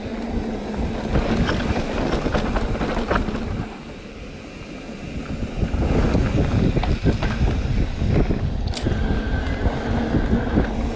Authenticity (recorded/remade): recorded